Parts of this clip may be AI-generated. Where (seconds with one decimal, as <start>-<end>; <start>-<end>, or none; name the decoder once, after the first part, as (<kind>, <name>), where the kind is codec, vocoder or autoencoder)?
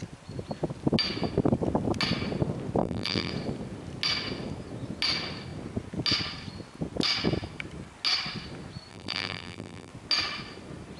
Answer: 2.8-3.3 (vocoder, BigVGAN v2); 8.9-9.9